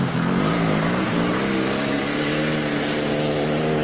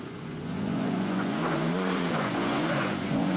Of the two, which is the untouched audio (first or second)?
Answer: first